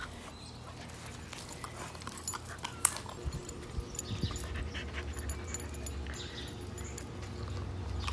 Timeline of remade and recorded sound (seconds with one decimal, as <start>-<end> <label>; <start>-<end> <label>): 0.0-8.1 recorded